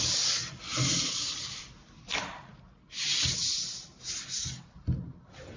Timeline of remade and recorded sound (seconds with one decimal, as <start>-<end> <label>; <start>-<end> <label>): 0.0-5.6 recorded